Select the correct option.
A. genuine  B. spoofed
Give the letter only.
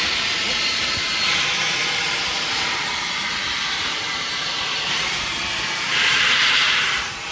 B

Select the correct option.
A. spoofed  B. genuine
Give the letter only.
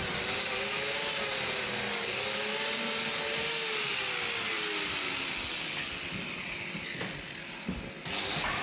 B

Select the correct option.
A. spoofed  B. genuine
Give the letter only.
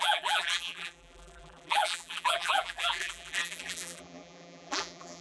A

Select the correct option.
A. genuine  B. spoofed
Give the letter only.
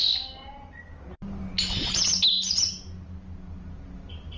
A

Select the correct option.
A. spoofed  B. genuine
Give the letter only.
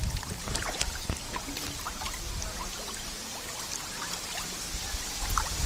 B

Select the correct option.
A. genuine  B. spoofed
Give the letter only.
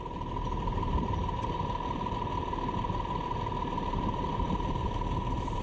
B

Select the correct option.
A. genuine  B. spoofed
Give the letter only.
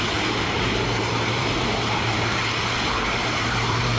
B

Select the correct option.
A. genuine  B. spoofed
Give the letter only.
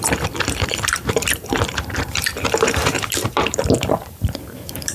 B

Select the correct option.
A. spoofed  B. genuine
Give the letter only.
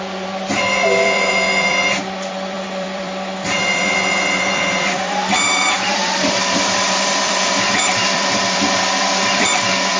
A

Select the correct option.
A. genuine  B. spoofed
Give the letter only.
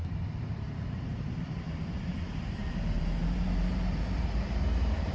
B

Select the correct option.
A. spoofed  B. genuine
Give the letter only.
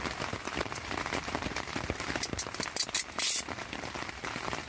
A